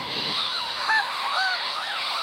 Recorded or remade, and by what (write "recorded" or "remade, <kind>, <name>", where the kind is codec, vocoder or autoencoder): remade, autoencoder, DAC-VAE